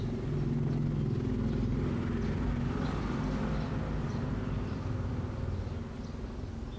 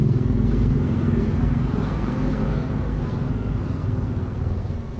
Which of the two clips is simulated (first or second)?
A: second